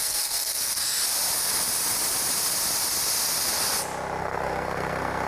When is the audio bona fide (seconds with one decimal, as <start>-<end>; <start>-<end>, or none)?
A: 1.0-4.2